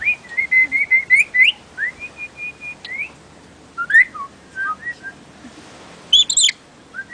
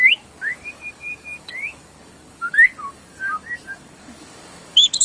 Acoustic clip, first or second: first